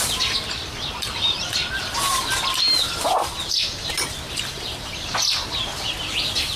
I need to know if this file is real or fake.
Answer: real